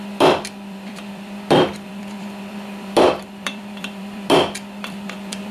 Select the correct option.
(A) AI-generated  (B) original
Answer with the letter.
A